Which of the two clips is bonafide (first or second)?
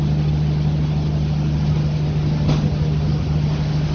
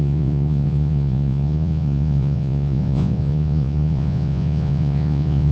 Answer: first